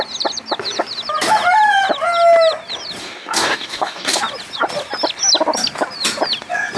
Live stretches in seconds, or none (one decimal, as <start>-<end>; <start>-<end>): 0.0-3.0; 4.2-6.8